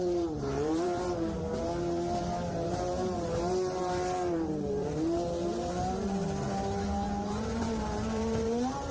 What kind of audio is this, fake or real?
fake